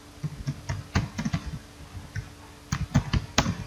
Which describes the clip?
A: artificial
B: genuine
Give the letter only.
B